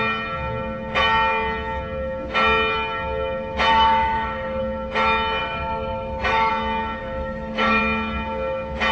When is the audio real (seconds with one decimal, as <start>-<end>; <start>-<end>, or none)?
0.0-3.7; 4.6-5.4; 6.5-7.0; 7.8-8.9